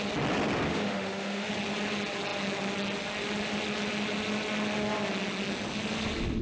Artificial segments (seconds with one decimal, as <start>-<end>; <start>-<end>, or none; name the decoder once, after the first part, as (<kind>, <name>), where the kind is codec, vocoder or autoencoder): 0.7-1.5 (autoencoder, DAC-VAE)